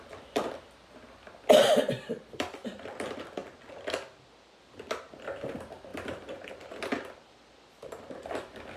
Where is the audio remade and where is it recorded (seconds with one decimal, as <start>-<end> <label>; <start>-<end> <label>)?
0.0-0.8 remade; 0.8-1.7 recorded; 1.7-3.4 remade; 3.4-4.6 recorded; 4.6-8.8 remade